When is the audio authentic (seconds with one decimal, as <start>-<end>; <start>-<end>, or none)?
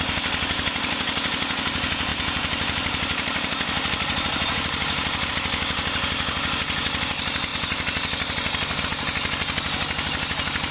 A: 0.0-2.1; 5.3-10.7